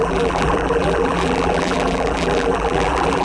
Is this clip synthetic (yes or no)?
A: yes